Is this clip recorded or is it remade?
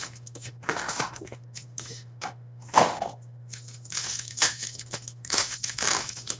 remade